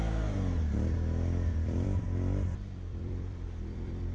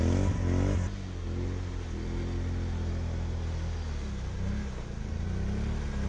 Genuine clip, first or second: second